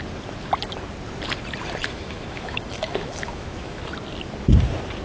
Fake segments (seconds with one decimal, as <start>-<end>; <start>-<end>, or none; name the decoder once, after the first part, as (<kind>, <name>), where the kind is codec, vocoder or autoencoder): 1.8-3.8 (autoencoder, DAC-VAE)